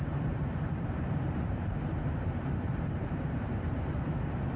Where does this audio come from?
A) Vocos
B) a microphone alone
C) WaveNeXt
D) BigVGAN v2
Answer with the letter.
D